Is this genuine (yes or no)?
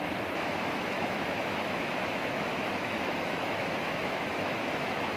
no